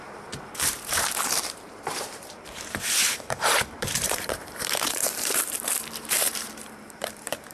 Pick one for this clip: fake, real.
fake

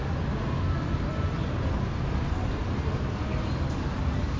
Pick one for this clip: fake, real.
real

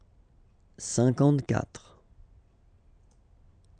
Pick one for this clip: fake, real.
fake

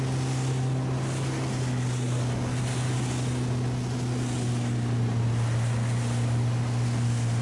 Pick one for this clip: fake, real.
real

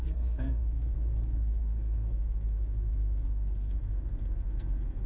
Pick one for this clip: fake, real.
fake